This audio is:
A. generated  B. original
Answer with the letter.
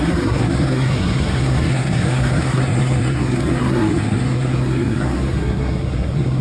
A